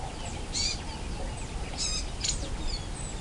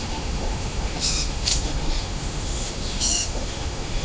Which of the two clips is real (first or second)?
first